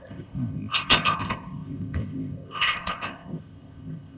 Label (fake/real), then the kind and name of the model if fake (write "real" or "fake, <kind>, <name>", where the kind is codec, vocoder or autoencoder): fake, codec, ZipCodec